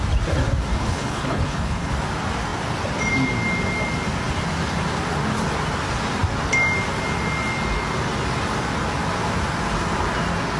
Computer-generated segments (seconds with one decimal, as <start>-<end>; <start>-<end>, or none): 0.7-1.9